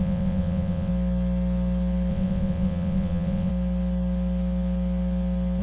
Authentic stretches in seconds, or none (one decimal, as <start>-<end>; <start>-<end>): 0.9-2.1; 3.5-5.6